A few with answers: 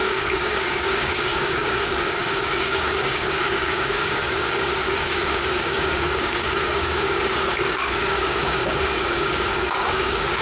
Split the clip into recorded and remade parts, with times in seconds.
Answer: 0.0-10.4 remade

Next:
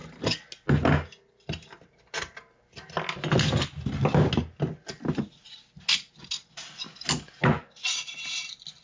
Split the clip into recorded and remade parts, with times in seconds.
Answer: 0.0-8.8 recorded

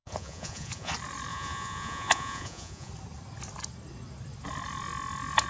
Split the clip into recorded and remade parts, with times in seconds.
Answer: 0.0-0.9 remade; 0.9-1.3 recorded; 1.3-2.9 remade; 2.9-5.5 recorded